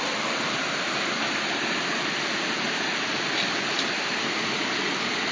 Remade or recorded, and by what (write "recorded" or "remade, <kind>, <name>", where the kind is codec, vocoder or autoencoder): recorded